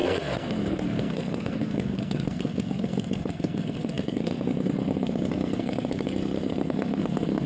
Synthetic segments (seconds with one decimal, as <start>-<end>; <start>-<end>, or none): 0.0-7.5

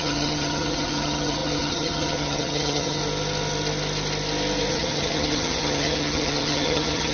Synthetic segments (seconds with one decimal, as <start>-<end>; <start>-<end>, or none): 0.0-3.0; 4.7-7.1